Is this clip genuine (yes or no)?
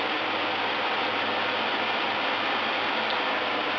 yes